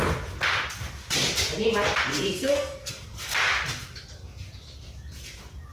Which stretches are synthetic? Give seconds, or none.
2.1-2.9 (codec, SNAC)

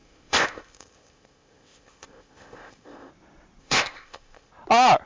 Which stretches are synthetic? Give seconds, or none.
0.0-3.1 (codec, ZipCodec); 3.6-4.5

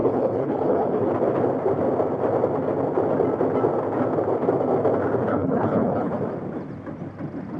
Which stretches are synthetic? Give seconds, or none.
0.0-1.1 (codec, HILCodec); 5.3-6.1

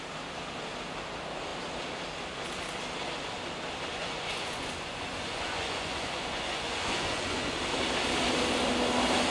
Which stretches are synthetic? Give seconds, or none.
3.9-7.6 (vocoder, Vocos)

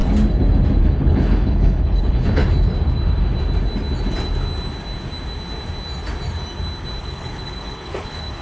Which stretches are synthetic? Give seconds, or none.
0.8-2.4 (codec, HILCodec); 7.0-8.4

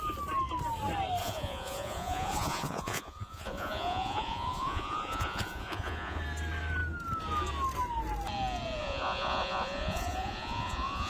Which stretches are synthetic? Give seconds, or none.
1.2-6.2 (vocoder, Vocos); 8.8-11.1

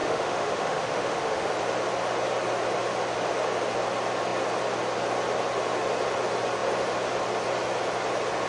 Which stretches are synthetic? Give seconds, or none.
0.0-1.5 (autoencoder, DAC-VAE)